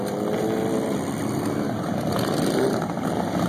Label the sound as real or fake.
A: real